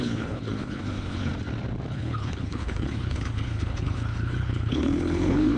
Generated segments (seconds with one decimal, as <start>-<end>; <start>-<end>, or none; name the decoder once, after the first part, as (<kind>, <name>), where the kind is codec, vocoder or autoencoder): 0.0-1.3 (codec, HILCodec); 1.9-5.6